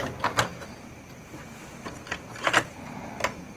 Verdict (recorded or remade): recorded